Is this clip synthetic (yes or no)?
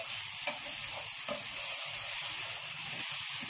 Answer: no